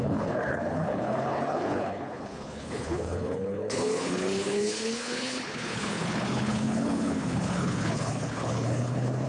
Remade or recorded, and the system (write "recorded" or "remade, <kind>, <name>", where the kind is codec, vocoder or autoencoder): remade, codec, HILCodec